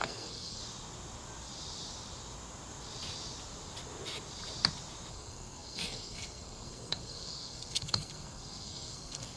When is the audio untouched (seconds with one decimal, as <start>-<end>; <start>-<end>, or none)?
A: 0.6-5.1